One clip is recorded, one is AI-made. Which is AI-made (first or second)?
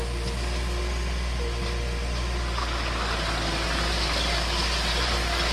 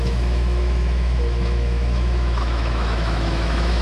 second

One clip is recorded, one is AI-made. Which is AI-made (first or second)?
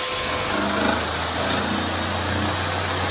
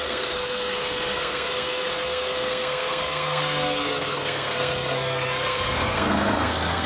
second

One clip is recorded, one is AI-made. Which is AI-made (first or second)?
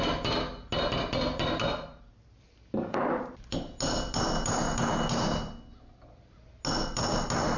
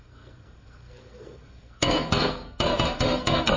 second